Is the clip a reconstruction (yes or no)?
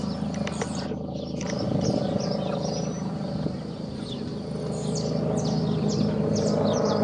no